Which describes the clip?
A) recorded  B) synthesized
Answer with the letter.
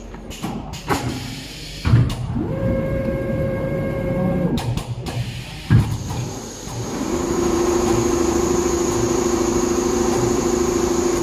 B